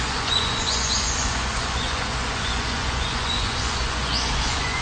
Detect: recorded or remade remade